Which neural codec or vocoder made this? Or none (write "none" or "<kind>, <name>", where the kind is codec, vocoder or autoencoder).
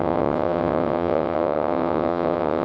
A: vocoder, WaveNeXt